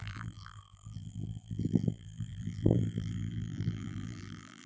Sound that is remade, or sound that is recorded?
remade